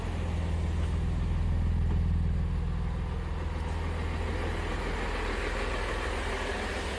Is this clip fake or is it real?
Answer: real